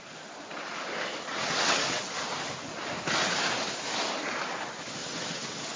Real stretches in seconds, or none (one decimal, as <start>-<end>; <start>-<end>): 0.0-1.3; 2.1-5.0